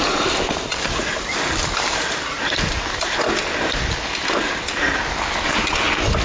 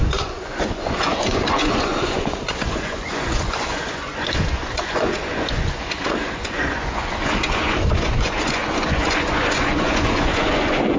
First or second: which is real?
first